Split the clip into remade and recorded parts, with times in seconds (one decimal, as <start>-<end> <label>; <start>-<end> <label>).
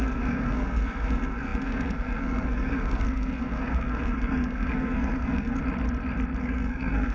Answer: 0.0-5.6 remade; 5.6-6.4 recorded; 6.4-7.1 remade